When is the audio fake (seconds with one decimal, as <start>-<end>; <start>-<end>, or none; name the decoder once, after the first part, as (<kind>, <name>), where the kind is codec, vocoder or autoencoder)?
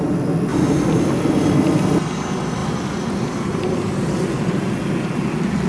0.5-1.8 (vocoder, BigVGAN v2)